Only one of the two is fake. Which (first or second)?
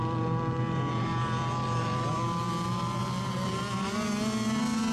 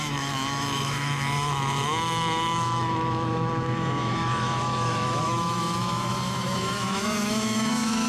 second